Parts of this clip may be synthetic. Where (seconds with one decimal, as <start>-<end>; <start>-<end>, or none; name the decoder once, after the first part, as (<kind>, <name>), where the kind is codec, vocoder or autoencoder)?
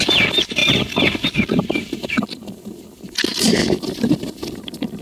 0.6-2.3 (vocoder, BigVGAN v2); 3.6-4.2